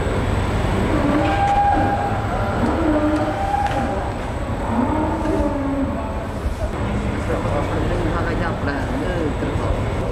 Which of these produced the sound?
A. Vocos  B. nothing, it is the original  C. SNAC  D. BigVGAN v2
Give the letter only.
B